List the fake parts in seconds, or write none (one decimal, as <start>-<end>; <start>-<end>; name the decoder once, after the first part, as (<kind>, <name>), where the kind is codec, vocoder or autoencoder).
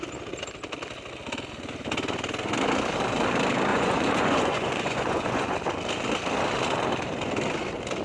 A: 3.7-5.6 (vocoder, Vocos)